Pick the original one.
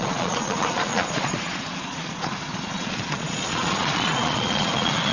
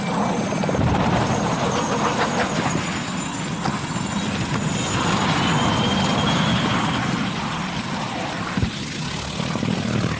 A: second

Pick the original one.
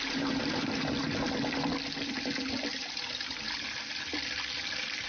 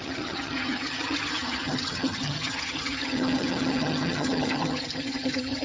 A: first